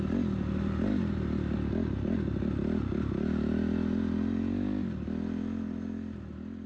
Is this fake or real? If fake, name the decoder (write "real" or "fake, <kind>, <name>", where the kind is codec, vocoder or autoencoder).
real